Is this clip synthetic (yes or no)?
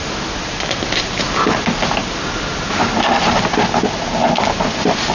no